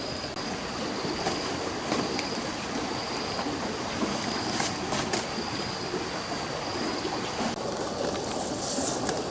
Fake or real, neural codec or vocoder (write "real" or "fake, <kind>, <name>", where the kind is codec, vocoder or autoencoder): real